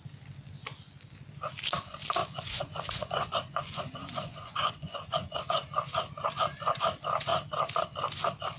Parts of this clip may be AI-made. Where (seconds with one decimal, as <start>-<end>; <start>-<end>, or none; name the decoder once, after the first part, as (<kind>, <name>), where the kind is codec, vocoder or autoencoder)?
2.2-5.4 (vocoder, Vocos)